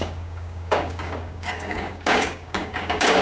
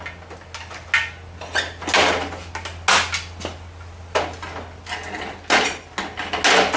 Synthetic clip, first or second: first